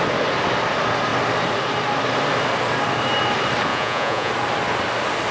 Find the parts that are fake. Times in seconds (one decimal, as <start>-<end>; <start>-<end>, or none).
3.7-4.3